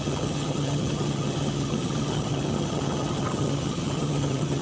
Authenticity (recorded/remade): remade